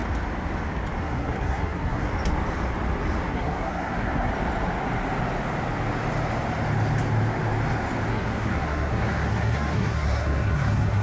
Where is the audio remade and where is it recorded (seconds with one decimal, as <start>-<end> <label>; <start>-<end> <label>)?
0.0-1.0 recorded; 1.0-2.1 remade; 2.1-3.3 recorded; 3.3-4.3 remade; 4.3-8.1 recorded; 8.1-11.0 remade